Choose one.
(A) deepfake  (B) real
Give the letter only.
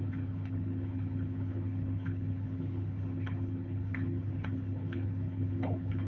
A